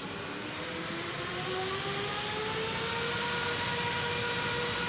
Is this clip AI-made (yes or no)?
no